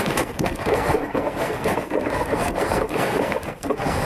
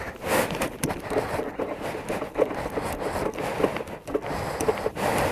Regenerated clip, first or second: first